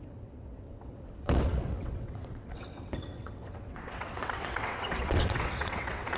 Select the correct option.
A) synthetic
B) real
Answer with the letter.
A